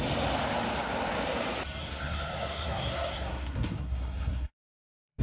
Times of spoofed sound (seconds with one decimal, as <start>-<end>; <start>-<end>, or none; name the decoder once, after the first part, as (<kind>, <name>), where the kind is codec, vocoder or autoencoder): 1.8-5.2 (codec, SNAC)